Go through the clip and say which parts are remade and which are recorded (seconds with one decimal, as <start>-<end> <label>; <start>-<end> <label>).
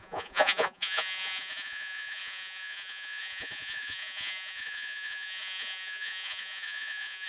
0.0-7.3 remade